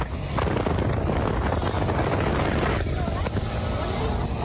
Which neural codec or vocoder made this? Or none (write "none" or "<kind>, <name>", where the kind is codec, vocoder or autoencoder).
none